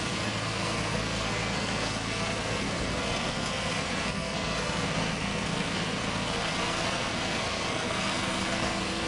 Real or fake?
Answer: fake